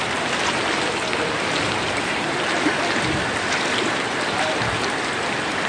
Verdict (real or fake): real